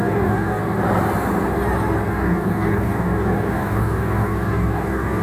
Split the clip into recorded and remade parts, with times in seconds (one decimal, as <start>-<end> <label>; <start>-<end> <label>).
0.0-0.6 remade; 0.6-2.1 recorded; 2.1-5.2 remade